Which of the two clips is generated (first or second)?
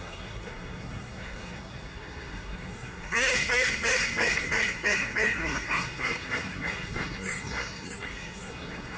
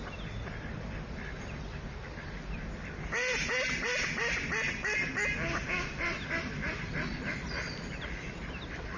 first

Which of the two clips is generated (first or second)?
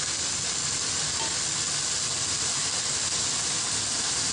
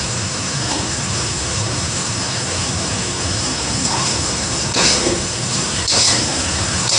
second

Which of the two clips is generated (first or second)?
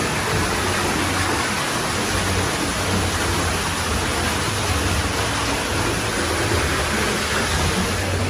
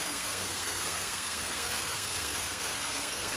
second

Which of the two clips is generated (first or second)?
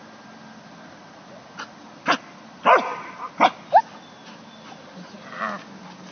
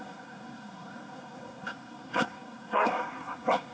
second